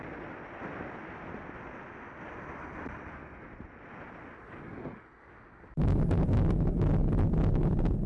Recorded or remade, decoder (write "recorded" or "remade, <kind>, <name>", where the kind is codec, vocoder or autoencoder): recorded